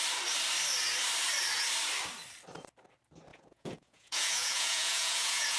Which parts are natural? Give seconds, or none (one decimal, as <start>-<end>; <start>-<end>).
0.0-3.3